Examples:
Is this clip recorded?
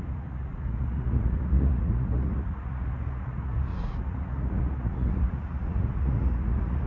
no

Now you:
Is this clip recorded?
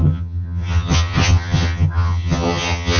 no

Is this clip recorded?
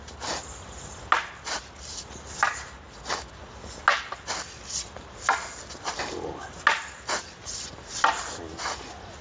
yes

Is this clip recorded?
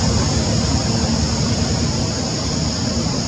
yes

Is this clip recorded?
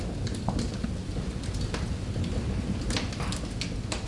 yes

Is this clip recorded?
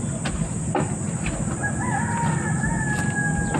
yes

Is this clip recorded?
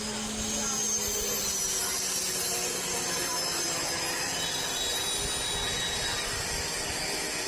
yes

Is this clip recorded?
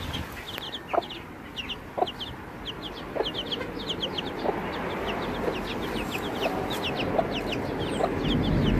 yes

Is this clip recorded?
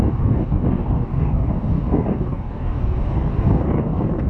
no